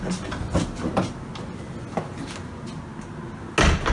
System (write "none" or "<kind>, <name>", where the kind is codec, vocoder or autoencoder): none